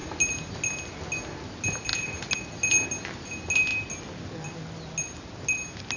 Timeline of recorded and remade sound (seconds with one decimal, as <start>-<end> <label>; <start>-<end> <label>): 0.0-6.0 recorded